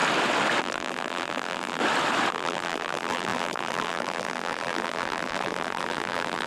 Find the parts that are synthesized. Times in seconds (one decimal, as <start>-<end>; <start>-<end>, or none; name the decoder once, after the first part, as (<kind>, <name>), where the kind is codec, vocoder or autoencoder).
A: 0.6-1.8 (vocoder, BigVGAN v2); 2.3-6.5